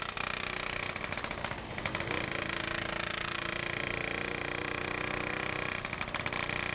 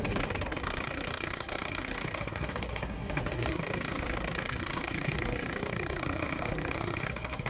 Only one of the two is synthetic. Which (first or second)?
second